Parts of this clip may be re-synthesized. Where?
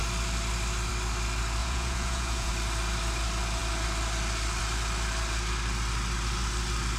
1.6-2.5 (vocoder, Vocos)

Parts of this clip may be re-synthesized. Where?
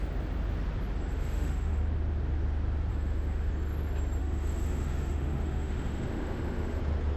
1.1-1.8 (autoencoder, DAC-VAE); 2.9-3.5; 4.2-6.8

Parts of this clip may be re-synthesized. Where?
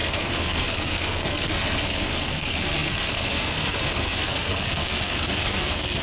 0.0-6.0 (codec, SNAC)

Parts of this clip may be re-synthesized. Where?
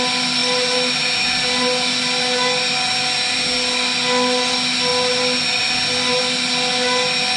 none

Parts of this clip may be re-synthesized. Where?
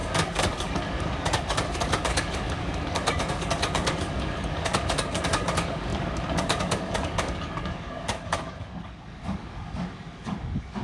0.0-10.8 (codec, DAC)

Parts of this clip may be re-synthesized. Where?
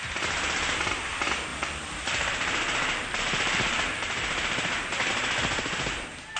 1.5-5.1 (vocoder, BigVGAN v2)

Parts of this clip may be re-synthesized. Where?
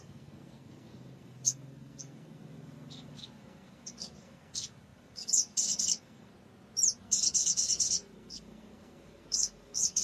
0.0-6.3 (codec, SNAC); 7.0-10.0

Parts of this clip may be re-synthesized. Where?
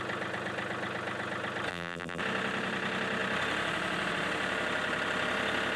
1.7-2.2 (vocoder, BigVGAN v2)